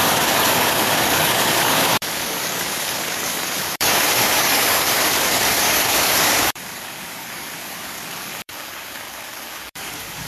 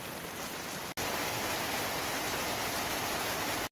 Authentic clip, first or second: second